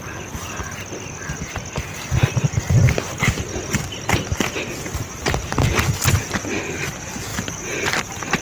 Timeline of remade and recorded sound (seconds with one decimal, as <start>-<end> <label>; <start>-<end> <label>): 0.0-7.3 recorded; 7.3-8.4 remade